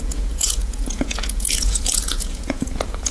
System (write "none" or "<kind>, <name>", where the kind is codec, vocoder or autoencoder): vocoder, Vocos